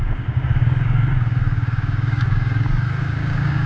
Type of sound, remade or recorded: remade